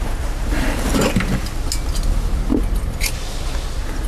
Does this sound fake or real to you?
real